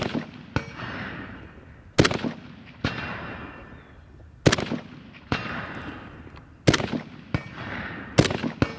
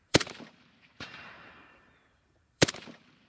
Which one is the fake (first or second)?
second